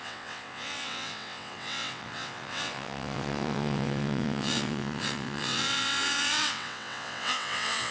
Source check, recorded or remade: remade